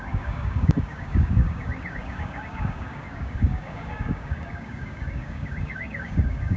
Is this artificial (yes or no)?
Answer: yes